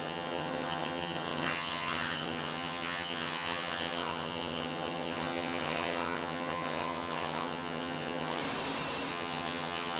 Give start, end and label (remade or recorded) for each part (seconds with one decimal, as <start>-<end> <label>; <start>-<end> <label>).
0.0-8.4 remade; 8.4-9.1 recorded; 9.1-10.0 remade